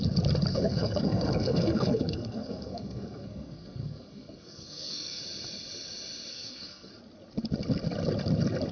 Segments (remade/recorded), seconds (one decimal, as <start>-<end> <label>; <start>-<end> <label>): 0.0-0.5 recorded; 0.5-5.2 remade; 5.2-6.3 recorded; 6.3-6.9 remade; 6.9-8.7 recorded